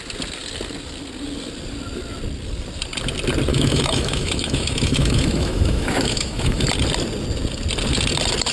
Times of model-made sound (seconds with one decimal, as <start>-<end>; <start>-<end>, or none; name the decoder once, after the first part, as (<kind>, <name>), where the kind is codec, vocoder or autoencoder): 3.5-6.7 (autoencoder, DAC-VAE)